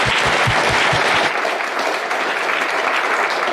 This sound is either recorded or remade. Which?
recorded